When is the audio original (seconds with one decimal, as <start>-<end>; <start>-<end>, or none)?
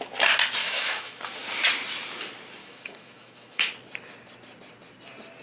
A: 0.0-0.6; 1.2-2.6; 3.7-5.4